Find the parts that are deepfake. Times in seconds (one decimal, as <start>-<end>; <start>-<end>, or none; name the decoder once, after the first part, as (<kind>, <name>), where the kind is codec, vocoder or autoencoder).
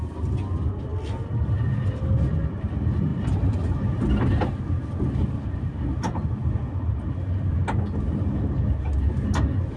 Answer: none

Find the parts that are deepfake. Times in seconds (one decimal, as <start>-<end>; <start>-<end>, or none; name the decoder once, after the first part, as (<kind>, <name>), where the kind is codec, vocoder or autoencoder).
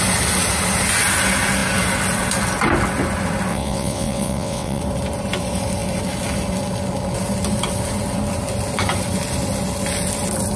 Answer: 3.5-4.8 (vocoder, WaveNeXt)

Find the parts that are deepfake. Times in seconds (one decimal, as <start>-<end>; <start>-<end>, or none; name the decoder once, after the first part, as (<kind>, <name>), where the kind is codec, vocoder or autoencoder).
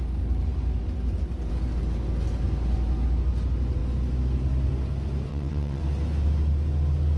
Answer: 5.3-5.8 (vocoder, WaveNeXt)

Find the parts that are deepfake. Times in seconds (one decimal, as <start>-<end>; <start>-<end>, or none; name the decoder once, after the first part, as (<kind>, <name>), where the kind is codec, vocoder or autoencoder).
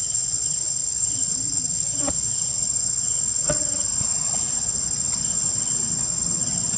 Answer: 0.0-6.8 (vocoder, WaveNeXt)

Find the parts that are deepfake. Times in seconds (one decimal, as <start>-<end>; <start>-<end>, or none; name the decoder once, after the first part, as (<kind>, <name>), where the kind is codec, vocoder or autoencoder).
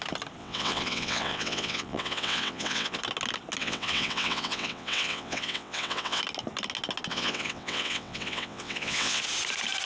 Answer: 0.4-3.0 (vocoder, WaveNeXt); 3.6-6.2; 7.1-9.2